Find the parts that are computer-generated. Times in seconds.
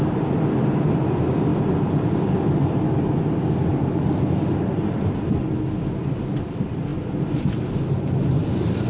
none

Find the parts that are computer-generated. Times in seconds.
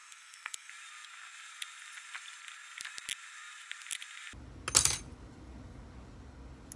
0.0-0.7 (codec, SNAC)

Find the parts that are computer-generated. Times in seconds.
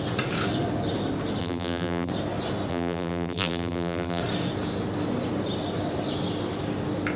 1.4-2.1 (vocoder, BigVGAN v2); 2.7-4.2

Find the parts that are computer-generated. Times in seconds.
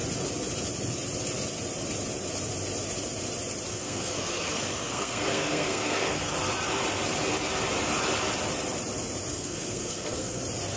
3.7-6.3 (codec, SNAC); 9.3-10.4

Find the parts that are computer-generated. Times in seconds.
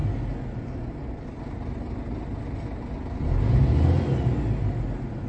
none